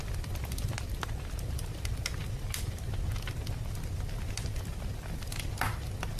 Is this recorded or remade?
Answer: recorded